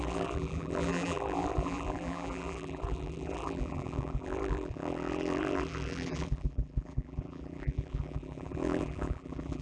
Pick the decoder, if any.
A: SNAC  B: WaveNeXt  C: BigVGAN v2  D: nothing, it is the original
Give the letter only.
C